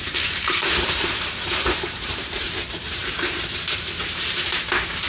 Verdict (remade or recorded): remade